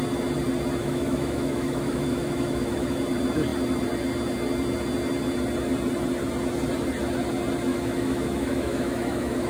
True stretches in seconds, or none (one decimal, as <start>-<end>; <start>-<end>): 0.0-0.8; 3.0-7.7